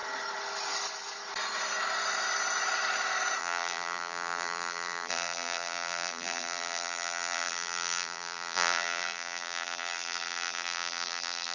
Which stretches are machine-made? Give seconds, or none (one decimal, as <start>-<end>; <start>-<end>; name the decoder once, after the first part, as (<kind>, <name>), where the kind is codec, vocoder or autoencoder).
3.4-11.5 (vocoder, BigVGAN v2)